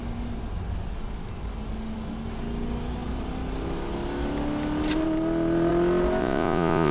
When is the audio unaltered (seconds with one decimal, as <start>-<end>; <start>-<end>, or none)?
0.0-6.2